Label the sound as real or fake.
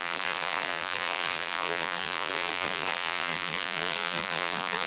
fake